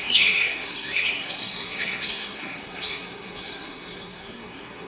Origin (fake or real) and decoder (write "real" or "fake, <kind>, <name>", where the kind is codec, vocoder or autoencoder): fake, codec, SNAC